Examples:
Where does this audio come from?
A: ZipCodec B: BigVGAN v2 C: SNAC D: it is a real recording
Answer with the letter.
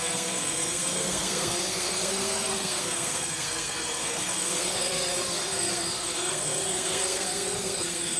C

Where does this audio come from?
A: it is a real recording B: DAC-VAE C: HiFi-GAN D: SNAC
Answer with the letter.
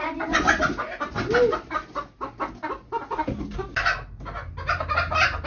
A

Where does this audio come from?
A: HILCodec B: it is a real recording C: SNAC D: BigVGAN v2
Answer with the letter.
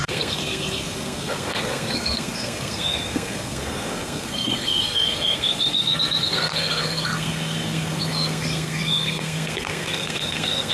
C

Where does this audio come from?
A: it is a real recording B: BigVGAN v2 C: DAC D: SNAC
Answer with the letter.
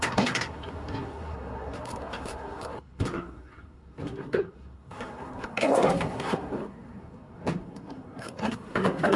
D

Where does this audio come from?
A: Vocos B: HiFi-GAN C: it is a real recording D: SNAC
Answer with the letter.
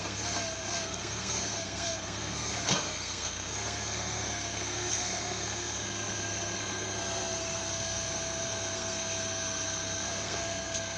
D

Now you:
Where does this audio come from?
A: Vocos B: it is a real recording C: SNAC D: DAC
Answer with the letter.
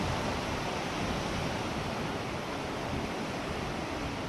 B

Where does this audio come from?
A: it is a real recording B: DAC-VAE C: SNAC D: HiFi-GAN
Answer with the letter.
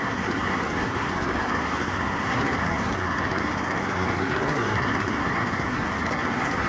C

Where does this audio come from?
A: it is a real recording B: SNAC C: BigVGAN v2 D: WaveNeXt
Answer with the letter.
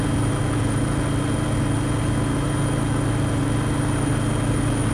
A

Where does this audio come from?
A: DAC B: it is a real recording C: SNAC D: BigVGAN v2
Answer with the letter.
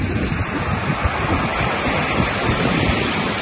B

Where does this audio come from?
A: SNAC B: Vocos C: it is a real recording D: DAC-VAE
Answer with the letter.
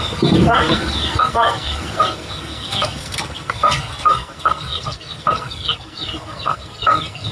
A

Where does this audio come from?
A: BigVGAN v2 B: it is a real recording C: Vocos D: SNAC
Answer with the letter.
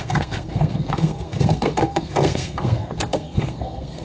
D